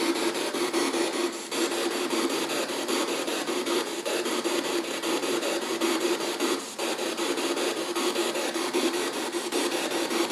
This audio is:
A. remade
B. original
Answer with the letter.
A